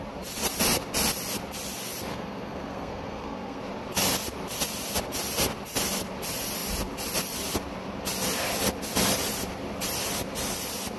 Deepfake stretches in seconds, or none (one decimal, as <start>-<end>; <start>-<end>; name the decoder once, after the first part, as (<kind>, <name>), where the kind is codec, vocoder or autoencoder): 2.1-3.6 (codec, SNAC)